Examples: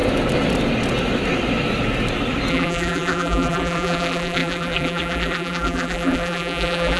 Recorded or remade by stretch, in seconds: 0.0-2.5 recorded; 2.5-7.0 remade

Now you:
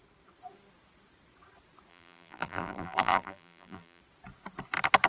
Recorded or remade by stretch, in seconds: 0.0-1.9 recorded; 1.9-4.0 remade; 4.0-5.1 recorded

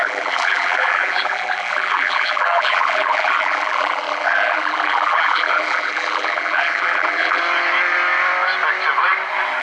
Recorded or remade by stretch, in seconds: 0.0-7.4 remade; 7.4-9.6 recorded

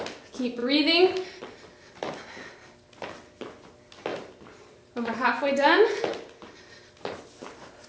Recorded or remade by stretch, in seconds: 0.0-4.1 recorded; 4.1-5.5 remade; 5.5-7.9 recorded

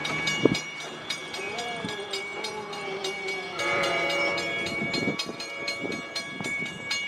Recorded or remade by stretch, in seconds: 0.0-7.1 remade

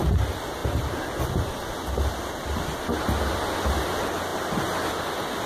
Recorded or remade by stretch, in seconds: 0.0-5.5 recorded

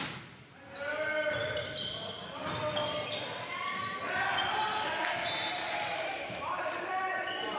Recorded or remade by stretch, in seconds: 0.0-0.9 recorded; 0.9-1.7 remade; 1.7-5.6 recorded; 5.6-6.9 remade; 6.9-7.6 recorded